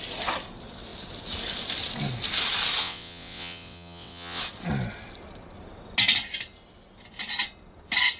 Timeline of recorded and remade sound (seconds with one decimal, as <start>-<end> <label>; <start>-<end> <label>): 0.0-2.8 recorded; 2.8-4.4 remade; 4.4-8.2 recorded